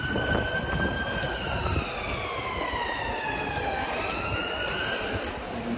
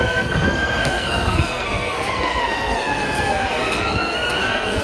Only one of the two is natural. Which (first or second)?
first